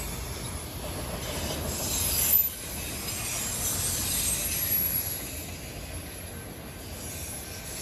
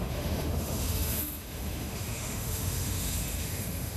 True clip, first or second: first